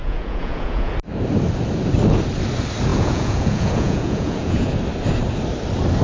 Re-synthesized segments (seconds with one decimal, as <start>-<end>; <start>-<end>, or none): 0.0-0.9; 2.9-4.7